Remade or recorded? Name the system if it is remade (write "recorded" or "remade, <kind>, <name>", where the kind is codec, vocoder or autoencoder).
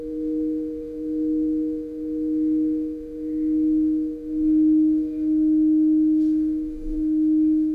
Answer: remade, autoencoder, DAC-VAE